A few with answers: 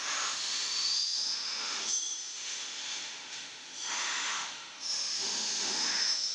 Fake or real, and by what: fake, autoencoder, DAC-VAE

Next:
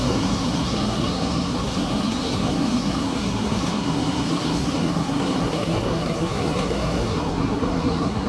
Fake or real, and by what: fake, codec, SNAC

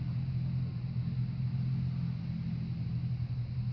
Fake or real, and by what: real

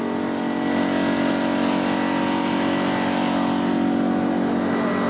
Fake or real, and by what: real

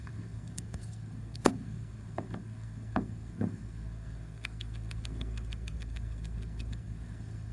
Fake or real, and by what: fake, codec, SNAC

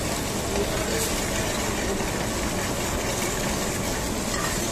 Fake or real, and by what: real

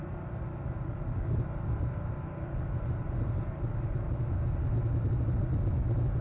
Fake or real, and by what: real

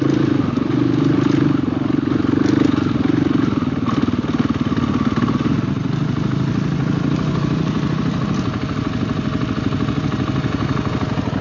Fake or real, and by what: real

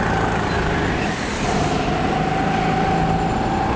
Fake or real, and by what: real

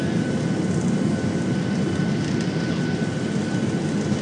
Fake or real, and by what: real